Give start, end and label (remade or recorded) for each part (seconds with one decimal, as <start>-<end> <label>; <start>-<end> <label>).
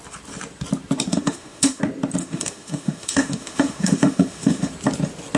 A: 0.0-1.1 recorded; 1.1-1.8 remade; 1.8-2.2 recorded; 2.2-4.7 remade; 4.7-5.4 recorded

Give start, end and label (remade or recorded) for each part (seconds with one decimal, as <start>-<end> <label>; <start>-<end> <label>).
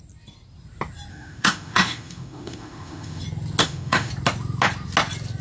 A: 0.0-1.1 recorded; 1.1-3.2 remade; 3.2-3.6 recorded; 3.6-4.1 remade; 4.1-5.4 recorded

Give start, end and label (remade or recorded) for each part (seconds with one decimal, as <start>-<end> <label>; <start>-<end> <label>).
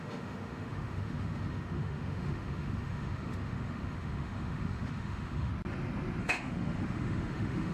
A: 0.0-5.5 remade; 5.5-6.2 recorded; 6.2-7.7 remade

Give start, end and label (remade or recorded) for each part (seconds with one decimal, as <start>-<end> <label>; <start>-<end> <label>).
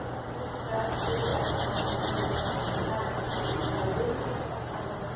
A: 0.0-5.2 recorded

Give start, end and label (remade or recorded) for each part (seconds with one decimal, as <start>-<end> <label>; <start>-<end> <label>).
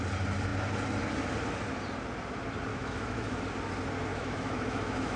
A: 0.0-2.7 recorded; 2.7-3.4 remade; 3.4-4.1 recorded; 4.1-5.2 remade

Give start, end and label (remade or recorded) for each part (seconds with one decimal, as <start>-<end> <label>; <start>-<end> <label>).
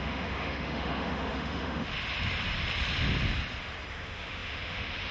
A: 0.0-1.9 remade; 1.9-3.9 recorded; 3.9-5.1 remade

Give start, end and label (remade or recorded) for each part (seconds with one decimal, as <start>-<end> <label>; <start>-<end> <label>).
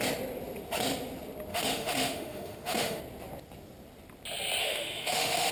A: 0.0-1.5 recorded; 1.5-3.0 remade; 3.0-4.6 recorded; 4.6-5.5 remade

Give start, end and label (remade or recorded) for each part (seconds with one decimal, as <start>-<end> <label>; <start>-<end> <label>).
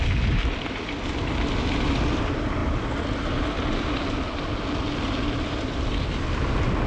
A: 0.0-6.9 recorded